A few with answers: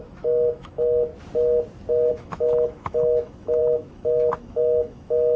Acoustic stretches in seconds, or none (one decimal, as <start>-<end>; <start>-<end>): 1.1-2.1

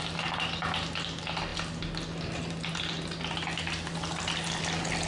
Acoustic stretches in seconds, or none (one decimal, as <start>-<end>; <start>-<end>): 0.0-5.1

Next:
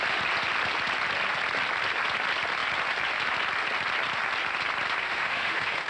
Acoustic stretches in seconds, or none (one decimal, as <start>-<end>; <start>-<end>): 0.0-5.0